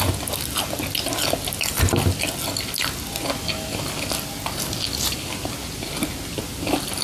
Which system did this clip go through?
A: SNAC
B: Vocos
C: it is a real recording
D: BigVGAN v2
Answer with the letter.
C